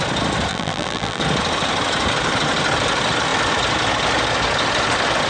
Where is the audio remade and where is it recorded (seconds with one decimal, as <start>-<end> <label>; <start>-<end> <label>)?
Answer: 0.0-0.5 recorded; 0.5-1.2 remade; 1.2-5.3 recorded

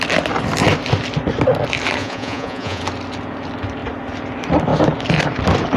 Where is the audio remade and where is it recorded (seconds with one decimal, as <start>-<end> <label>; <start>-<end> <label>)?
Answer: 0.0-2.0 recorded; 2.0-2.8 remade; 2.8-5.8 recorded

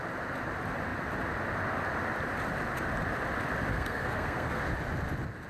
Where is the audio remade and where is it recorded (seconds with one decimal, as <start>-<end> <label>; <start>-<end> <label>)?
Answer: 0.0-3.7 recorded; 3.7-4.6 remade; 4.6-5.5 recorded